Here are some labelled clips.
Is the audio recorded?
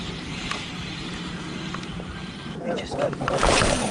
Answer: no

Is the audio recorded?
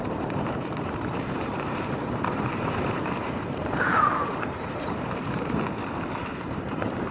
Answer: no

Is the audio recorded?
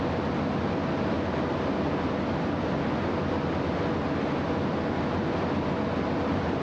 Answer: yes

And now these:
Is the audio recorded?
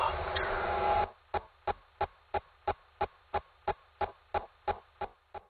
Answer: yes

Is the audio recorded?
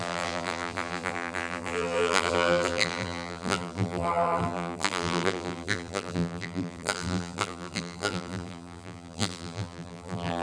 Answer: no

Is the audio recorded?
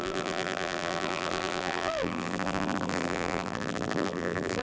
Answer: no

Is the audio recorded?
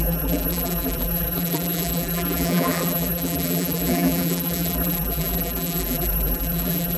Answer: no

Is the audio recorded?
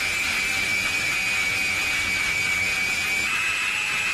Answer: yes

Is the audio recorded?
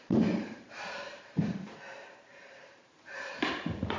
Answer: no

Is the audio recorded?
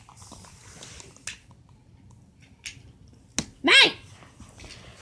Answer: yes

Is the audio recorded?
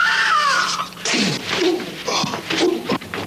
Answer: no